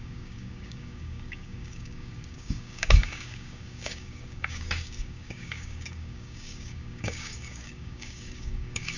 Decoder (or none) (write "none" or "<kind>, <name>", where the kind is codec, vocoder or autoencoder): codec, DAC